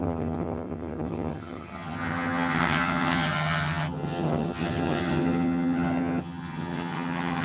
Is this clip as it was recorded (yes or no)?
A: no